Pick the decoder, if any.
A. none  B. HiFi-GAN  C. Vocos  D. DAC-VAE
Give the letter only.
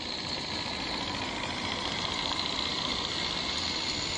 A